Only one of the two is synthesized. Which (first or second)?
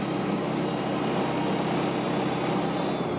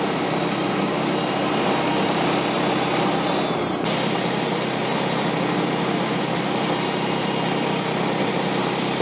second